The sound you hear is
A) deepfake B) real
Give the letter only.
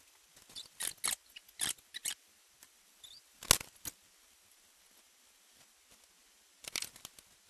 B